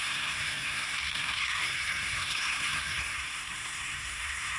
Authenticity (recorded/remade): remade